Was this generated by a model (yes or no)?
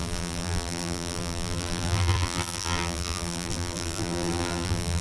yes